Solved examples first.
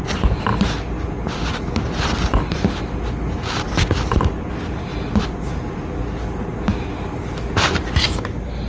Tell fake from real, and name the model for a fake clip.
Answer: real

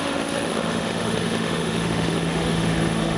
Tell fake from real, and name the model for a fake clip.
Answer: fake, autoencoder, DAC-VAE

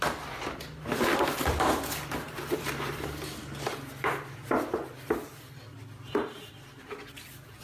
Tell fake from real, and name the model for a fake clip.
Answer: fake, vocoder, BigVGAN v2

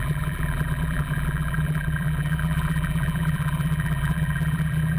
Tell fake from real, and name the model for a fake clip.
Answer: fake, vocoder, BigVGAN v2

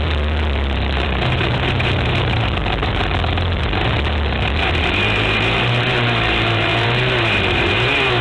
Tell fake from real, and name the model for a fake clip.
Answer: fake, vocoder, BigVGAN v2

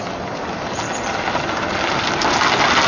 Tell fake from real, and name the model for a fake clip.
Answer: real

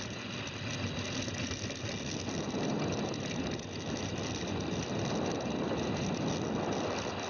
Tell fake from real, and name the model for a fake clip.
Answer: real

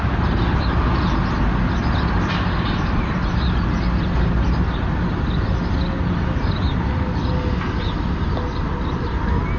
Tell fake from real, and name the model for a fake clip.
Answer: real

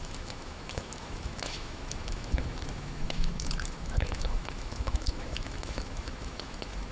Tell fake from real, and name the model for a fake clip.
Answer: fake, autoencoder, DAC-VAE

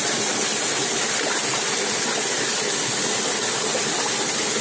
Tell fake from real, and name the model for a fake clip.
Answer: real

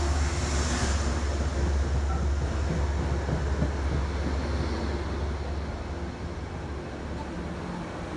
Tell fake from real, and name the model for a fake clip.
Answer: real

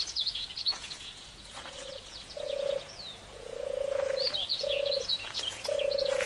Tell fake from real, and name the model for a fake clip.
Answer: fake, vocoder, Vocos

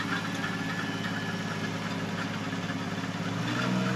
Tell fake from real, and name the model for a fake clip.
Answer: real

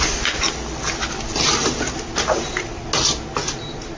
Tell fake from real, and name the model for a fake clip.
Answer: real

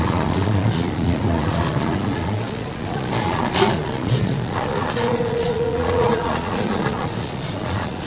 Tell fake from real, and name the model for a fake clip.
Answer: fake, vocoder, Vocos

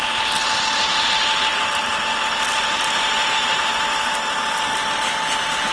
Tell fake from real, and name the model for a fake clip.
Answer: real